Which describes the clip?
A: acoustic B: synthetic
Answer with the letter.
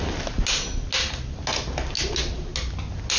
A